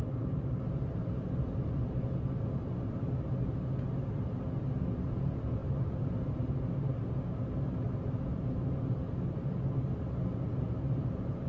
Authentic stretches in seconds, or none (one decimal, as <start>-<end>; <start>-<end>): 0.0-11.5